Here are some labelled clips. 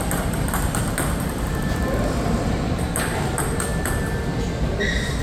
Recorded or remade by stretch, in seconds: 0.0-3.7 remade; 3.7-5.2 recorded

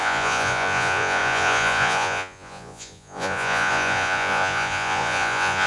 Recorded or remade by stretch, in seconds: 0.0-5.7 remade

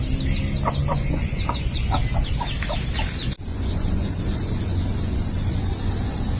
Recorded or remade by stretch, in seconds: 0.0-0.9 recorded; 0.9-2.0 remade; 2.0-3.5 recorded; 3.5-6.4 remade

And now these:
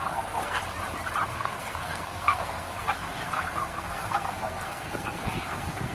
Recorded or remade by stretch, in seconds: 0.0-0.6 remade; 0.6-1.3 recorded; 1.3-5.9 remade